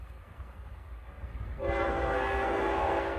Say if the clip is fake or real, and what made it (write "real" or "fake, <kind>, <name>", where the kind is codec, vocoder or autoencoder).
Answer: fake, codec, SNAC